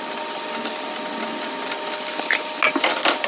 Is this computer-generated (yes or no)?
no